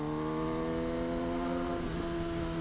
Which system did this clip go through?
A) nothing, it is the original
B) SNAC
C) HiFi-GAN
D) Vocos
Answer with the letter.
A